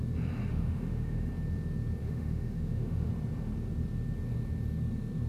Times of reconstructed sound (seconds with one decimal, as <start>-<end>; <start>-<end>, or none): 0.5-1.3; 2.0-3.1